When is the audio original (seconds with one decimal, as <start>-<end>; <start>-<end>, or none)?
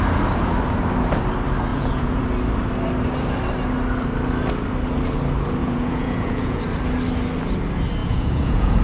0.0-1.7; 2.2-5.6; 6.6-8.0